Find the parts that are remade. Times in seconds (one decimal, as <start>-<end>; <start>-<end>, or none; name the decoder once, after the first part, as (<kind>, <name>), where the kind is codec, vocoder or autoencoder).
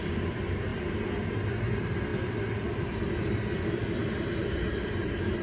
0.7-1.2 (vocoder, BigVGAN v2); 2.1-3.3; 4.0-5.4